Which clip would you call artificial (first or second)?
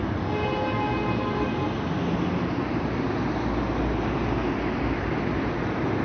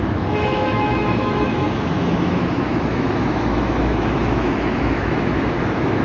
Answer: second